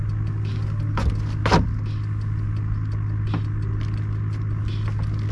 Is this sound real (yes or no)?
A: yes